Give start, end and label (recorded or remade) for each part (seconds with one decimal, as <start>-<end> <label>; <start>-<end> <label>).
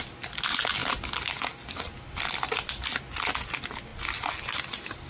0.0-5.1 recorded